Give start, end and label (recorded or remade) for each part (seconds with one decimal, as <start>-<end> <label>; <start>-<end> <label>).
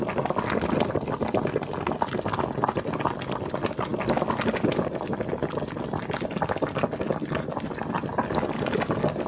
0.0-9.3 recorded